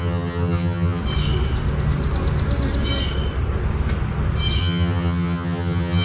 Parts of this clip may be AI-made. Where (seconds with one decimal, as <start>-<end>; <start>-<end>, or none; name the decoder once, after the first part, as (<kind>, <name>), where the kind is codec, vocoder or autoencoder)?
0.0-1.0 (vocoder, HiFi-GAN); 4.6-6.0